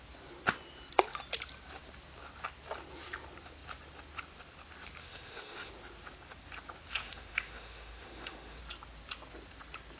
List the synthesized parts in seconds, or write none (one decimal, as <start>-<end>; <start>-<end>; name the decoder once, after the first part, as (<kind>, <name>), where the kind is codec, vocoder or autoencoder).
5.0-5.7 (autoencoder, DAC-VAE); 7.0-8.6